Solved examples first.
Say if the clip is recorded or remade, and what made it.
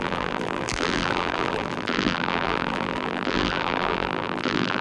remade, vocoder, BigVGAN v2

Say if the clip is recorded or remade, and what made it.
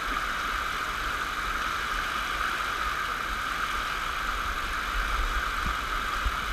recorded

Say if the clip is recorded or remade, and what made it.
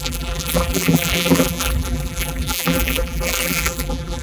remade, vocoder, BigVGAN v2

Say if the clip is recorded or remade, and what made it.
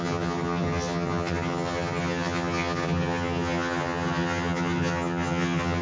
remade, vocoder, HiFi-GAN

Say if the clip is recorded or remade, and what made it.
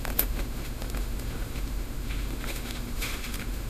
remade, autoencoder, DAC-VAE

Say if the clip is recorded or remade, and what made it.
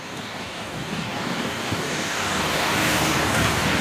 remade, codec, DAC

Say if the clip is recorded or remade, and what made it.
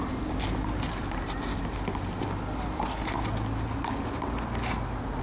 recorded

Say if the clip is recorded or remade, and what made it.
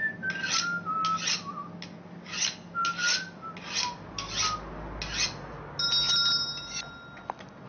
recorded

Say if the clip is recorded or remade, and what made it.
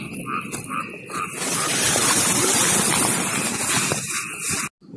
recorded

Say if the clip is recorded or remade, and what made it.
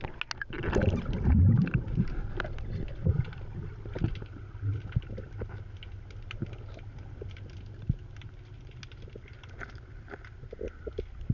recorded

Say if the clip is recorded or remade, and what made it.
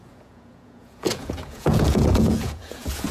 remade, vocoder, Vocos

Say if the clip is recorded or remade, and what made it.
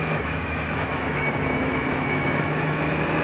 remade, autoencoder, DAC-VAE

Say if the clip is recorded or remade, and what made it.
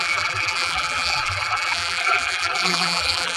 remade, vocoder, BigVGAN v2